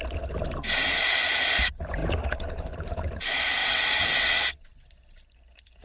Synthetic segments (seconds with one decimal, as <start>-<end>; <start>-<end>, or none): 3.6-4.7